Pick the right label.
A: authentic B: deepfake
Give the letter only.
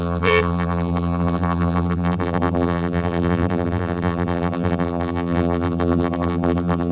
B